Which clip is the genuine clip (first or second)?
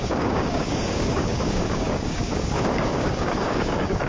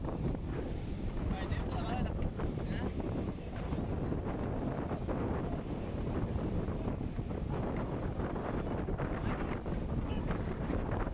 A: second